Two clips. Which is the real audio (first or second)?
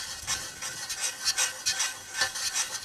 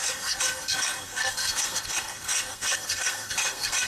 first